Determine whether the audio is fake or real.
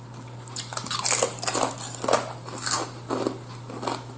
real